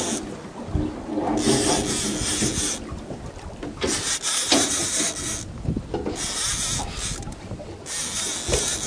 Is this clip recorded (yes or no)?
yes